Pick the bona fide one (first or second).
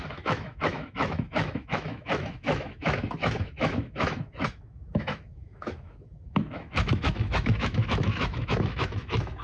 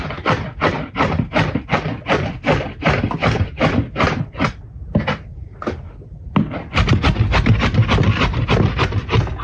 second